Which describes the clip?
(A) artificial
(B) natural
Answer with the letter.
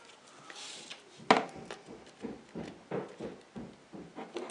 B